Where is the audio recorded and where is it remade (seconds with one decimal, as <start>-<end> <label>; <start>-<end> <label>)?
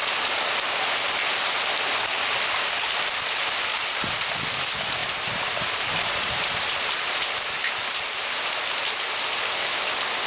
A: 0.0-5.0 recorded; 5.0-8.1 remade; 8.1-10.3 recorded